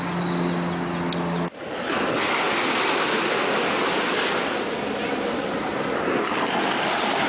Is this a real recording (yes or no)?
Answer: yes